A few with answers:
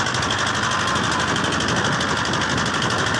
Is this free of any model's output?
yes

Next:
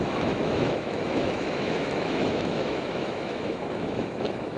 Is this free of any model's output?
no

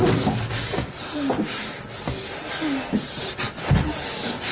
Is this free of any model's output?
yes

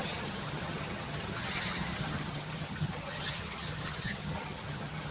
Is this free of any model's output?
no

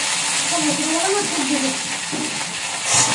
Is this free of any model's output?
yes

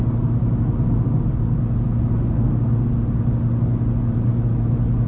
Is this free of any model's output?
yes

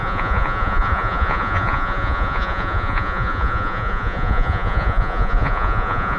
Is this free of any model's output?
no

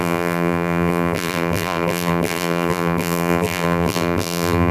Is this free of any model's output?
no